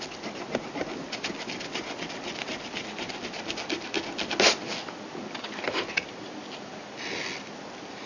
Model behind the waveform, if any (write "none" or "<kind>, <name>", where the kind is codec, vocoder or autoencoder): none